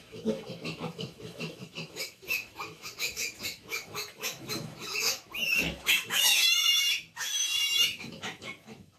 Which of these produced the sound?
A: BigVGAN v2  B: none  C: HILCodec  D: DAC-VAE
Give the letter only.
D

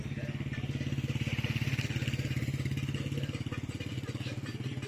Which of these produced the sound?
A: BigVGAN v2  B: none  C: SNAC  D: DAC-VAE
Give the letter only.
B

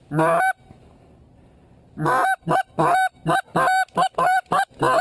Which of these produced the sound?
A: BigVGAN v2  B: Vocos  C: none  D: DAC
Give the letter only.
C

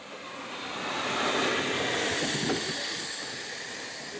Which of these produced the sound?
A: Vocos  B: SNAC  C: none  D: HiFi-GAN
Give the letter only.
C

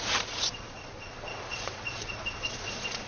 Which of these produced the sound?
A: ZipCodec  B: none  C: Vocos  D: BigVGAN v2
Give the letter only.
C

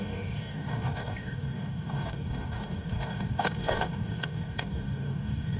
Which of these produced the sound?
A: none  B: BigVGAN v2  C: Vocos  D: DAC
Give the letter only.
D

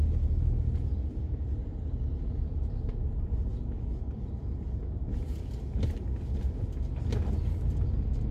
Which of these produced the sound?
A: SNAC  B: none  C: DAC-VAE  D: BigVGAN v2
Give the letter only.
B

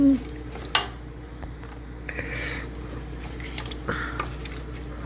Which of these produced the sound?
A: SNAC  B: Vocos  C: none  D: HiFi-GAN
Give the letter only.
C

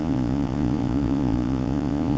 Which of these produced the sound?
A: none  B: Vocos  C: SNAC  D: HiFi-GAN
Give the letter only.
B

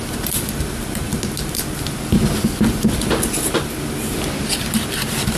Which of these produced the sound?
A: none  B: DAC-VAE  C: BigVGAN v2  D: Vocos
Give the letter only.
A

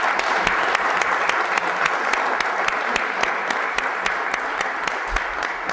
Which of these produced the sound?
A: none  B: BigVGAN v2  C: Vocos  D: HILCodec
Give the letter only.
A